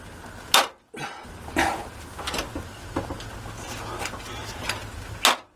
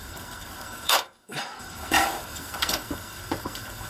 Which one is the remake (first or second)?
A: second